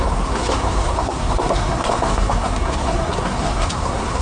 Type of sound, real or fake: fake